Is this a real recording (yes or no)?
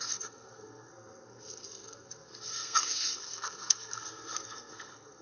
no